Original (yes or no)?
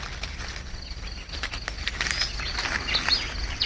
yes